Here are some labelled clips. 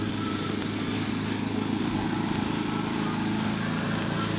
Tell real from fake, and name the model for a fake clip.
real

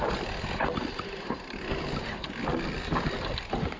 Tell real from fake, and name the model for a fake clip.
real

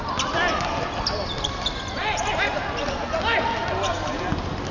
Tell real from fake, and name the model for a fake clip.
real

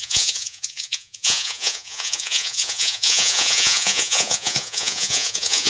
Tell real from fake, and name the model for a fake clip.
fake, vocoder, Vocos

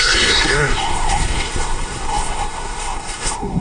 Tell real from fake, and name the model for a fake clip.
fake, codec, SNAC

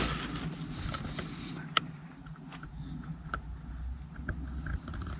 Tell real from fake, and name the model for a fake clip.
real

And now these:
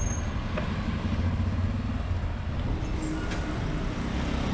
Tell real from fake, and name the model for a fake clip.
real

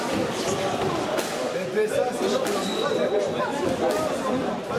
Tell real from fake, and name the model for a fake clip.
real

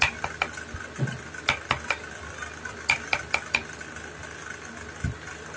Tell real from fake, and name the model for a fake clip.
real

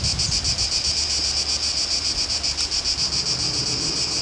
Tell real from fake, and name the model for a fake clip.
real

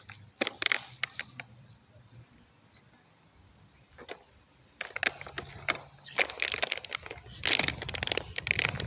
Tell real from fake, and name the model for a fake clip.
real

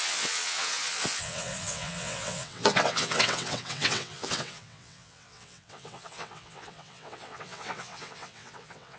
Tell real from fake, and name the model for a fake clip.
fake, vocoder, WaveNeXt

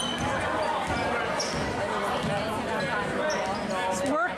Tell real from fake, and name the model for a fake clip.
real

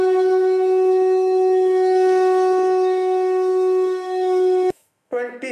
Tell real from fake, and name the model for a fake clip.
fake, autoencoder, DAC-VAE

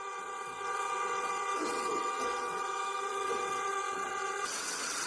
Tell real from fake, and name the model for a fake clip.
fake, vocoder, WaveNeXt